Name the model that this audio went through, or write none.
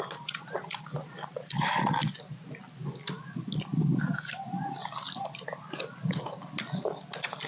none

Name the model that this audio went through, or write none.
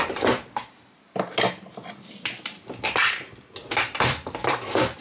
none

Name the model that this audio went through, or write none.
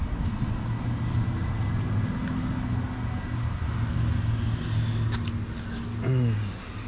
none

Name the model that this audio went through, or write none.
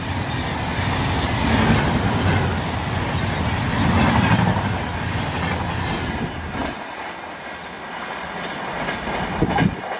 none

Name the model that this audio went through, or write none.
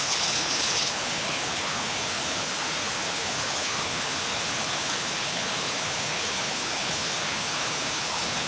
codec, HILCodec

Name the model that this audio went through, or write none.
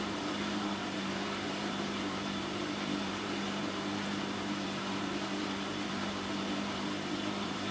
vocoder, BigVGAN v2